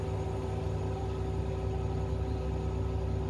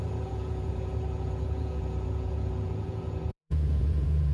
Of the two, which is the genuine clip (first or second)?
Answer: first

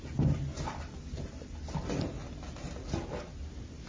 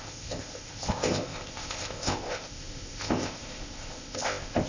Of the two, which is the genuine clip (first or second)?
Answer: first